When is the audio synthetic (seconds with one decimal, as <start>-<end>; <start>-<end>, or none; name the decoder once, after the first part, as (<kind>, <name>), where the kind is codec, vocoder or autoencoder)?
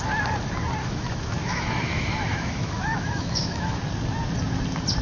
0.8-3.8 (autoencoder, DAC-VAE)